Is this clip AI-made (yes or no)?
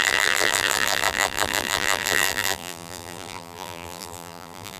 yes